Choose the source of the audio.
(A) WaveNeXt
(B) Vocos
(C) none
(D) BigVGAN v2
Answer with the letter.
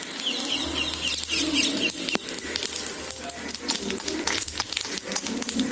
C